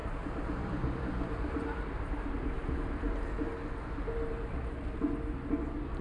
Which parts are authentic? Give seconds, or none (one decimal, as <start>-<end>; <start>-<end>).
2.3-6.0